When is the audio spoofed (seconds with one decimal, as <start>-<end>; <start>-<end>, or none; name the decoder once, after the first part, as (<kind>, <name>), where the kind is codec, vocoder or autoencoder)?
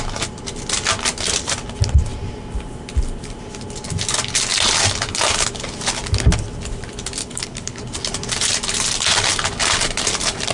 7.2-7.8 (codec, HILCodec)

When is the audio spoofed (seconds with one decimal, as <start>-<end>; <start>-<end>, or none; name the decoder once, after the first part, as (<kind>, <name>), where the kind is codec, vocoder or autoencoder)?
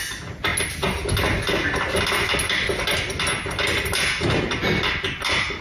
none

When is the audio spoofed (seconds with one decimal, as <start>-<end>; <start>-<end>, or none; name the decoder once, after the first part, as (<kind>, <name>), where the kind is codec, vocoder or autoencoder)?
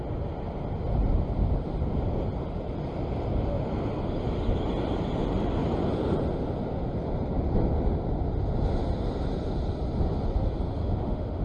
10.8-11.4 (autoencoder, DAC-VAE)